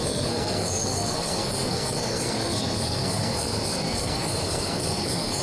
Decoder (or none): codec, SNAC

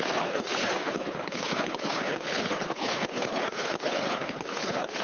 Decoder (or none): codec, HILCodec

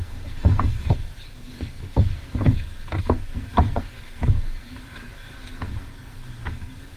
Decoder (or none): codec, SNAC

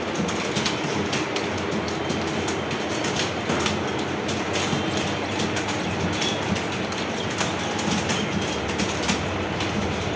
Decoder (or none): none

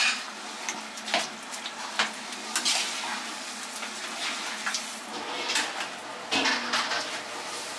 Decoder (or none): none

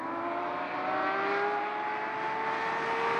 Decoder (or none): none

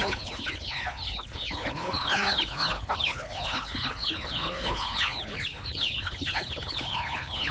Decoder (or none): codec, HILCodec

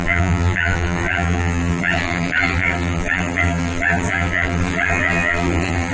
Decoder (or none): vocoder, BigVGAN v2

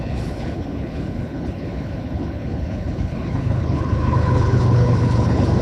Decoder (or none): codec, HILCodec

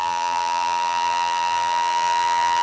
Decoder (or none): vocoder, BigVGAN v2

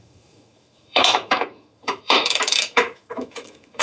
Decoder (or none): autoencoder, DAC-VAE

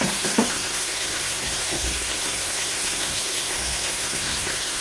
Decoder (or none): codec, SNAC